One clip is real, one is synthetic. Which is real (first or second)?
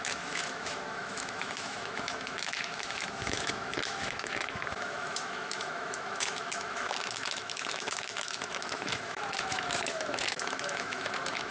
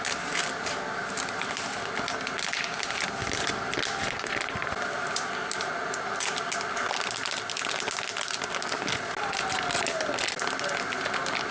second